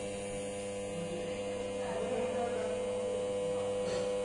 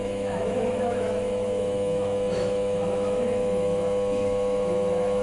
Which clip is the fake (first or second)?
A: second